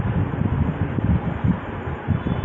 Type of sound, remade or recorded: recorded